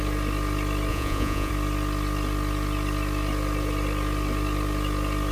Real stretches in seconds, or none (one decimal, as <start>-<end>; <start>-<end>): 0.0-0.9; 1.5-5.3